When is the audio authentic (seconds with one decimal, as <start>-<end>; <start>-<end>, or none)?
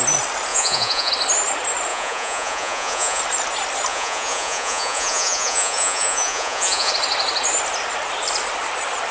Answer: 0.0-0.5; 1.1-1.9; 3.2-3.9; 6.9-9.1